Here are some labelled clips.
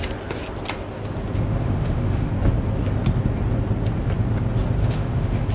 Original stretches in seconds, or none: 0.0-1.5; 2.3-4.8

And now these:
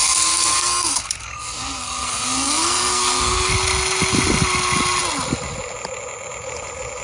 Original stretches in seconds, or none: 3.5-7.0

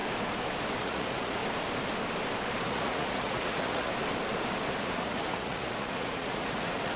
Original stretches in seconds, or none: 0.0-0.8; 1.4-2.6; 3.9-4.8

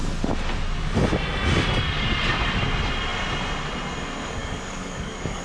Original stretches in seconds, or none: 0.0-4.4

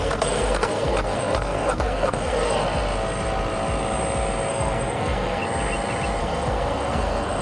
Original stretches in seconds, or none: 2.6-4.5; 5.4-6.2

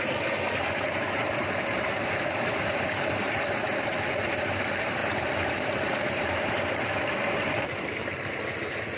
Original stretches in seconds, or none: 0.0-1.2; 3.2-5.0; 8.3-9.0

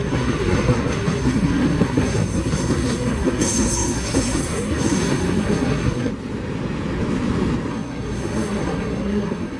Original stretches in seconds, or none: 6.1-7.7

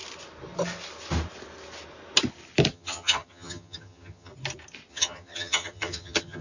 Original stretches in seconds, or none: 0.0-2.7; 4.3-4.9